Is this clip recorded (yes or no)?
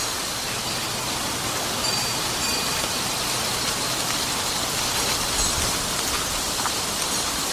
yes